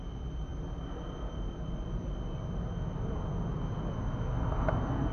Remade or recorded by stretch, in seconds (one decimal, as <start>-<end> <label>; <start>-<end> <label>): 0.0-5.1 recorded